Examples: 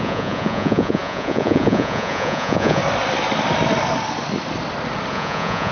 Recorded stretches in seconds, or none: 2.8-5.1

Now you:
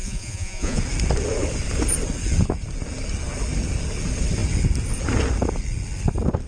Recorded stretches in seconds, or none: 0.8-6.5

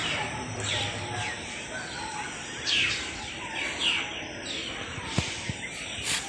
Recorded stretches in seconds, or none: 3.8-4.6